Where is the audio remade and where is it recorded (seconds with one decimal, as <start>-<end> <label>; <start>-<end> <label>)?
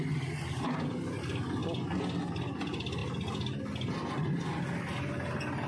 0.0-5.7 recorded